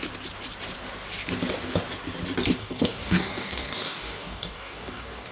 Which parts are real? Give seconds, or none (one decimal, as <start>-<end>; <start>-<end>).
0.0-2.6